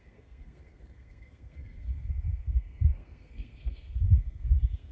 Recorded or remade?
remade